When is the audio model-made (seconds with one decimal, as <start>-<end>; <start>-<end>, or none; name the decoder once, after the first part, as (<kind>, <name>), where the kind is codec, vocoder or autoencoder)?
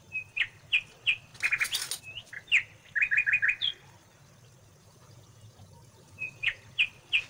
4.8-6.7 (vocoder, Vocos)